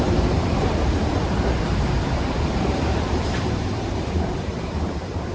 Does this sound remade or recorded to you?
remade